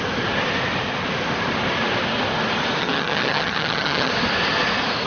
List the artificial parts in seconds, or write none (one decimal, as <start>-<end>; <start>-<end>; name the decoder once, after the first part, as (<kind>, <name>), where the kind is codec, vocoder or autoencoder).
2.8-4.1 (vocoder, HiFi-GAN)